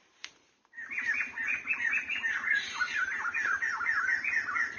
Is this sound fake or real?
fake